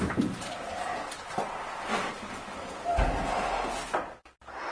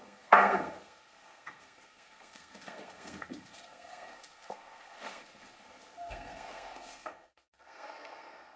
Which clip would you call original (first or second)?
first